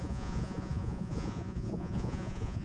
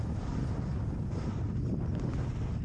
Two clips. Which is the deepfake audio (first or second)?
first